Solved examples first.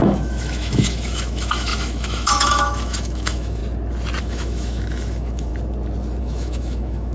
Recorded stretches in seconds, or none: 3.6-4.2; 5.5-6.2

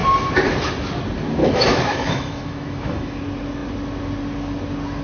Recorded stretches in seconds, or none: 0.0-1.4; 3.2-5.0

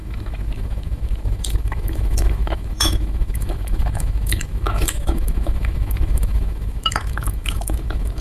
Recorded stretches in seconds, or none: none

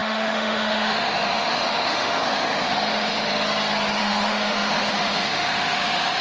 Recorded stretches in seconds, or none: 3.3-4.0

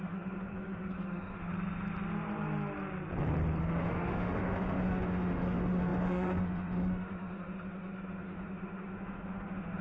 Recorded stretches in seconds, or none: 1.5-3.6

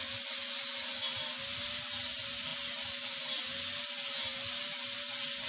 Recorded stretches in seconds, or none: 0.0-5.5